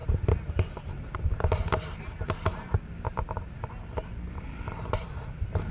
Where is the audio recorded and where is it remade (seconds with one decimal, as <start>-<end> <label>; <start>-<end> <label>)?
0.0-0.7 recorded; 0.7-1.6 remade; 1.6-4.7 recorded; 4.7-5.7 remade